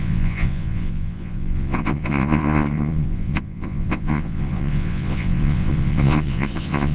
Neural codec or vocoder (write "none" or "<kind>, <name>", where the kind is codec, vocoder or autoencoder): vocoder, Vocos